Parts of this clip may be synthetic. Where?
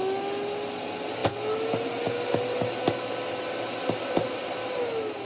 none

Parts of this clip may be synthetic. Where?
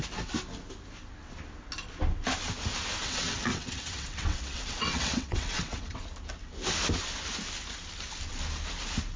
3.0-6.0 (vocoder, WaveNeXt)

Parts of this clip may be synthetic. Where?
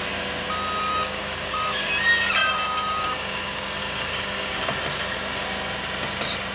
0.9-1.9 (codec, DAC); 2.4-4.6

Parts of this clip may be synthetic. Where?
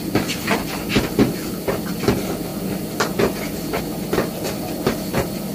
none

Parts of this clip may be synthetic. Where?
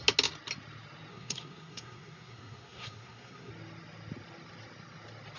1.1-3.5 (codec, SNAC)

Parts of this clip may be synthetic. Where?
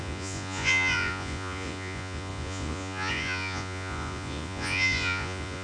0.0-5.6 (vocoder, Vocos)